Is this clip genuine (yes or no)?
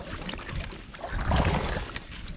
yes